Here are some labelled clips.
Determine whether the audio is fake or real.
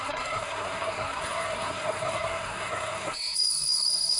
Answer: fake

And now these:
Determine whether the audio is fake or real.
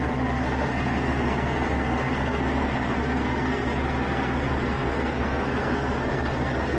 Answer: fake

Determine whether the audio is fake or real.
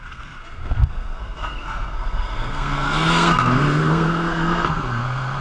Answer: fake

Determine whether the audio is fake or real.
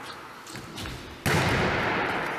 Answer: real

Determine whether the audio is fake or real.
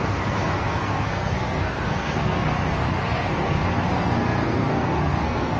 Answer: fake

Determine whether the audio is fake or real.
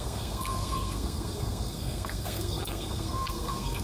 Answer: fake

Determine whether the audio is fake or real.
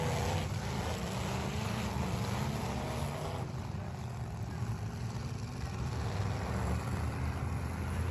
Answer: real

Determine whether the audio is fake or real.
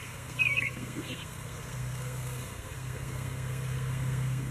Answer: fake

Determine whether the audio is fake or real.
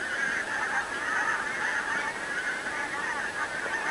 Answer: real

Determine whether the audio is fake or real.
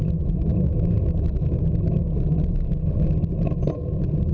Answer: real